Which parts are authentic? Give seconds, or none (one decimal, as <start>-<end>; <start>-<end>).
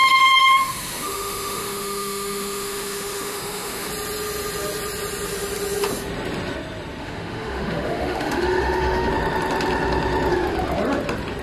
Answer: 3.9-7.0; 9.1-11.4